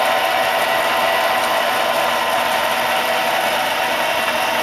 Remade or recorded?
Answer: recorded